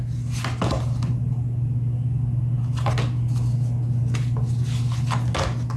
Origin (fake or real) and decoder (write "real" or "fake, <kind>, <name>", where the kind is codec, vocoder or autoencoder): real